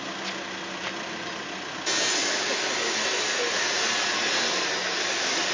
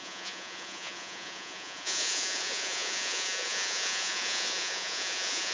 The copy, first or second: second